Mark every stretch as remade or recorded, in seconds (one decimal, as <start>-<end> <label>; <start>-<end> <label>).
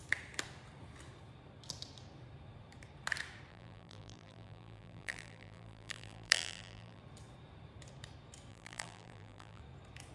0.0-3.5 recorded; 3.5-7.0 remade; 7.0-8.5 recorded; 8.5-9.6 remade; 9.6-10.1 recorded